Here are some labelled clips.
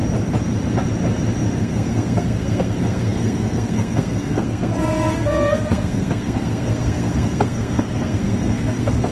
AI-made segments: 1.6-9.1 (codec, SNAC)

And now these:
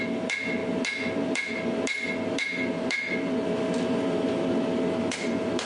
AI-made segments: none

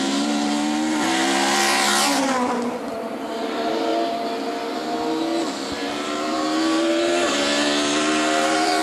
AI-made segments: 0.0-3.9 (vocoder, BigVGAN v2); 5.4-8.8

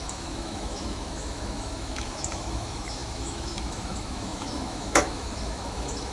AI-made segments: 0.0-6.1 (autoencoder, DAC-VAE)

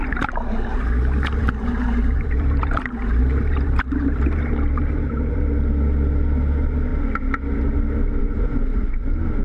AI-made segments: 1.4-5.4 (vocoder, BigVGAN v2)

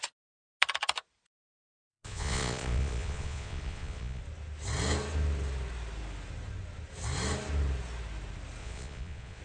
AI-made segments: 1.9-4.2 (vocoder, Vocos); 8.6-9.4

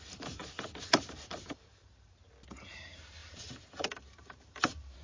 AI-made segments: 0.0-0.4 (vocoder, BigVGAN v2); 1.0-2.2; 2.7-5.0

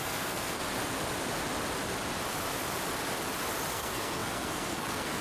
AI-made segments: 0.0-0.6 (codec, SNAC); 3.7-5.2